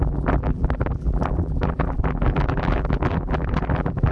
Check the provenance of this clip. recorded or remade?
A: remade